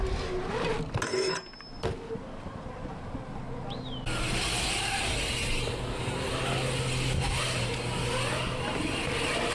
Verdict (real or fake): real